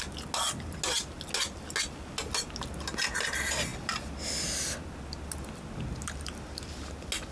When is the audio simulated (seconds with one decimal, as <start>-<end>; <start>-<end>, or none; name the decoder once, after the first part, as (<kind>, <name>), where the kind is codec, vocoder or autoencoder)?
none